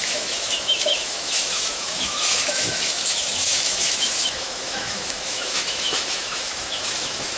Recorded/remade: remade